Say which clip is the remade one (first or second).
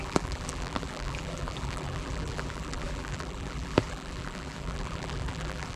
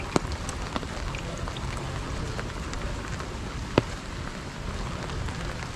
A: first